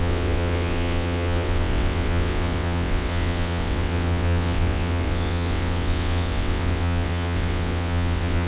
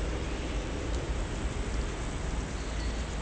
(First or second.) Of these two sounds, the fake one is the first